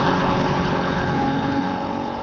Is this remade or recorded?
remade